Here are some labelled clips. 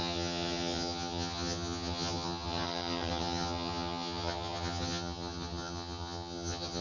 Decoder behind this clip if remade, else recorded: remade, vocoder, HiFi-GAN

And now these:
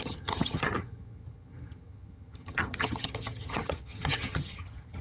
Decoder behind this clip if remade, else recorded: remade, vocoder, HiFi-GAN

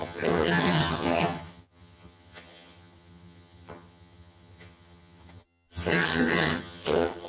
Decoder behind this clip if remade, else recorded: remade, vocoder, HiFi-GAN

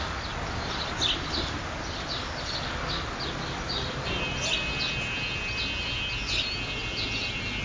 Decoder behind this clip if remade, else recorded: recorded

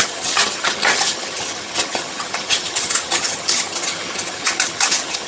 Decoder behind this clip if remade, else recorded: remade, vocoder, HiFi-GAN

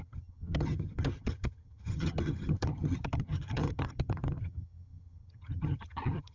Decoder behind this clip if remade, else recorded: remade, vocoder, HiFi-GAN